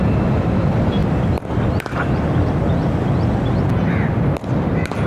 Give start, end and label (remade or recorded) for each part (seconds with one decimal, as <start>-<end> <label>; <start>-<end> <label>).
0.0-5.1 recorded